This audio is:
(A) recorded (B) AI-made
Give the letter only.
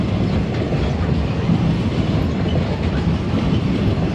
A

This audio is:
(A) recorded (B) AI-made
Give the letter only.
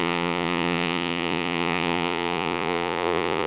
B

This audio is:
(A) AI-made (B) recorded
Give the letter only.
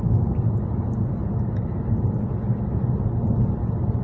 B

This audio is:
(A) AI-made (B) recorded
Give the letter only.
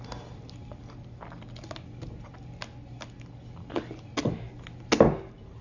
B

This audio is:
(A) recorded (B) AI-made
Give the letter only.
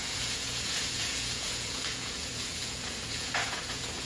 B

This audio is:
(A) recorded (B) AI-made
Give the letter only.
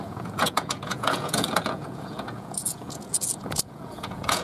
B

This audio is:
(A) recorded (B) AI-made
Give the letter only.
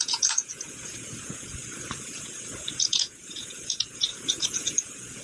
B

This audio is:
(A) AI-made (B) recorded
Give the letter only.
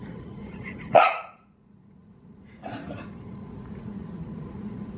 A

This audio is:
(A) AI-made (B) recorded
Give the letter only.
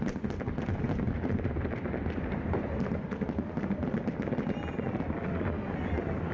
B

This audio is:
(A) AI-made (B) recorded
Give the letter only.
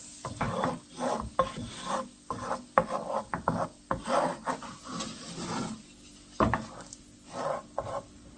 B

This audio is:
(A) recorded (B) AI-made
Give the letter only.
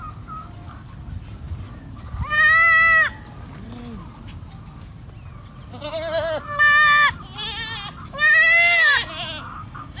A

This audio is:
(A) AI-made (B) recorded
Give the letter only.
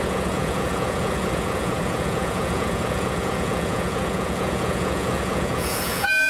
A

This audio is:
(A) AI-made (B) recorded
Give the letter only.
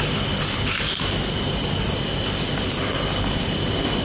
B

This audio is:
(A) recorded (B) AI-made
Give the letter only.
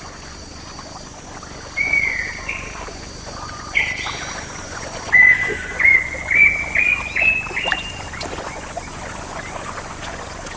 B